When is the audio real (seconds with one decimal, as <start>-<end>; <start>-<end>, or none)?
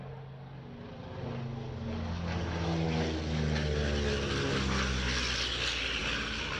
0.0-6.0